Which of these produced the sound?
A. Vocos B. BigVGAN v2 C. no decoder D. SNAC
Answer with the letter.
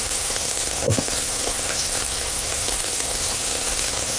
D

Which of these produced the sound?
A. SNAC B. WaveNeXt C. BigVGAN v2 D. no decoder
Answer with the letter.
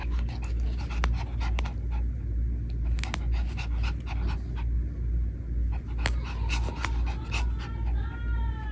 D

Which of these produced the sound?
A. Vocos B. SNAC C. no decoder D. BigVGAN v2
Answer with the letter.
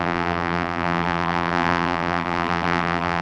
D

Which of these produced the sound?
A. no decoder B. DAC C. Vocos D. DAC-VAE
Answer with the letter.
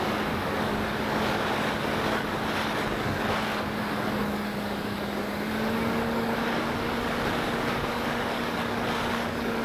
B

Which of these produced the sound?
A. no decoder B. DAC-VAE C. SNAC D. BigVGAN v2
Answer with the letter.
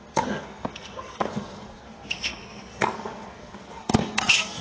C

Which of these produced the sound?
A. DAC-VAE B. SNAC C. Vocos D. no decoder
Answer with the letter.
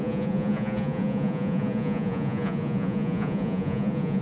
C